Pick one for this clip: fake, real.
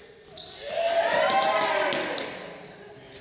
real